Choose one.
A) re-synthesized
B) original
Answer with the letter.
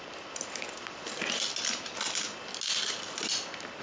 B